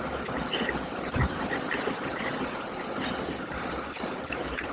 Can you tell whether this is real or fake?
real